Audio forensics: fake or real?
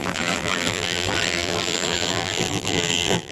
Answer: fake